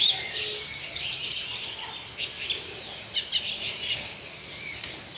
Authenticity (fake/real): real